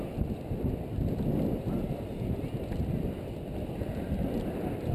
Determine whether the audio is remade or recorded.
recorded